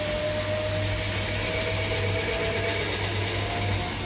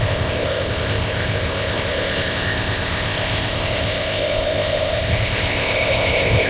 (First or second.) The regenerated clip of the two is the second